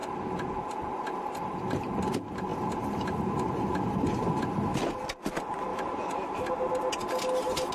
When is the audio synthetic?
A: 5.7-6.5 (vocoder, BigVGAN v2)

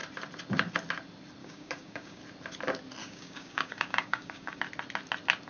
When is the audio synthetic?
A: 1.4-2.2 (codec, DAC); 3.0-4.6

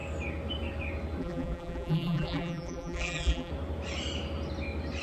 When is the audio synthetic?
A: 1.2-3.5 (vocoder, BigVGAN v2)